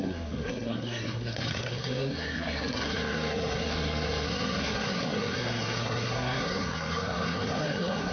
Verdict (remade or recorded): remade